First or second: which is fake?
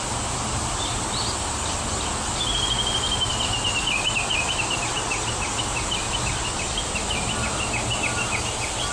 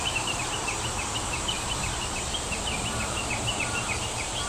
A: second